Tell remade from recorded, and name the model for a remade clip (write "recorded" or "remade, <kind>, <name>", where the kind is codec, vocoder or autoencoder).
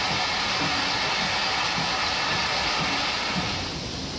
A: recorded